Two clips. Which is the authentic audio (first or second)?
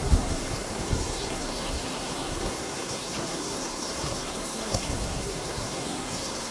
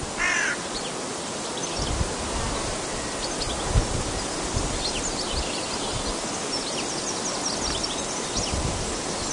second